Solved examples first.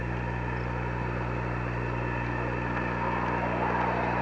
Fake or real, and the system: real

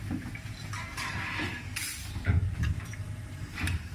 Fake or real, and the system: fake, vocoder, BigVGAN v2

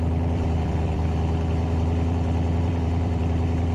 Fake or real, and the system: fake, vocoder, BigVGAN v2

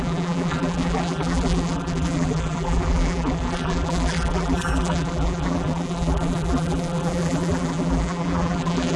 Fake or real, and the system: fake, vocoder, BigVGAN v2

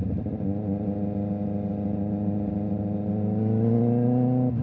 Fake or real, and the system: real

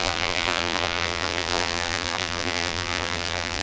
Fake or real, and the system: fake, vocoder, BigVGAN v2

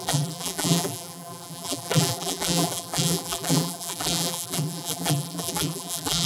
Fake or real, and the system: fake, vocoder, BigVGAN v2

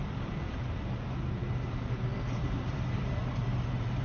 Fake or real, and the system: fake, vocoder, BigVGAN v2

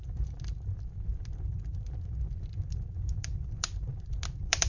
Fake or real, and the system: fake, vocoder, BigVGAN v2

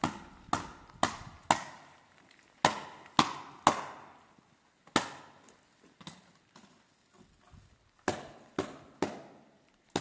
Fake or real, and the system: real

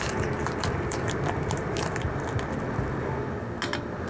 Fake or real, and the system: real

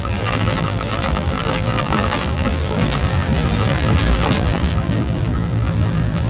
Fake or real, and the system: fake, vocoder, BigVGAN v2